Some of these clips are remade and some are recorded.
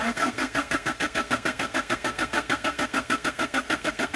remade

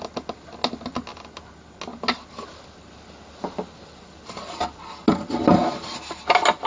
recorded